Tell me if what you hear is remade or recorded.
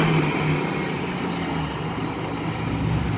recorded